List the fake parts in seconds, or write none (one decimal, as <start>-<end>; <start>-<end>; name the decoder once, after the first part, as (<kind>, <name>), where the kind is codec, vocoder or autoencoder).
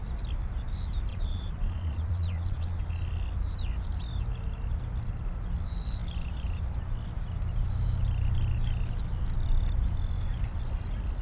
1.1-2.8 (vocoder, Vocos)